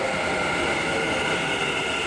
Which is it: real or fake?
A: real